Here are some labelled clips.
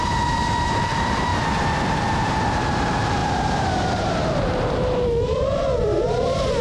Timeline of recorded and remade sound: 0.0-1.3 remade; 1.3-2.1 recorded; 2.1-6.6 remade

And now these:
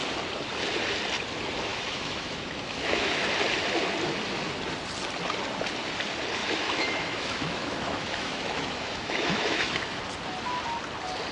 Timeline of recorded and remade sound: 0.0-1.7 recorded; 1.7-3.3 remade; 3.3-6.4 recorded; 6.4-10.0 remade; 10.0-11.3 recorded